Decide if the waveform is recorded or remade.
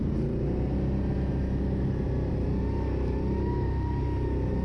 recorded